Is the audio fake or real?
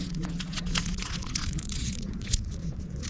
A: fake